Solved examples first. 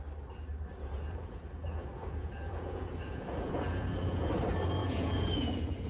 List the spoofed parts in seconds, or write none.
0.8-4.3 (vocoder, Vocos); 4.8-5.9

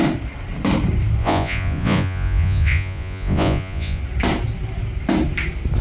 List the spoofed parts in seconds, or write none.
1.2-4.0 (vocoder, Vocos)